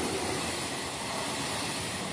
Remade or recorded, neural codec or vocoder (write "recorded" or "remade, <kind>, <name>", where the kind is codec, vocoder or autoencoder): recorded